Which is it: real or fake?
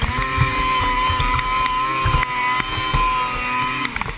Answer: real